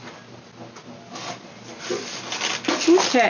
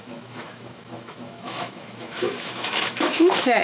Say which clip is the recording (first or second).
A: first